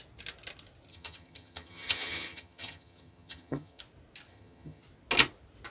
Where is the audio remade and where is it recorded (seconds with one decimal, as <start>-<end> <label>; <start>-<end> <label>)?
0.0-0.9 recorded; 0.9-3.8 remade; 3.8-4.3 recorded; 4.3-4.8 remade; 4.8-5.7 recorded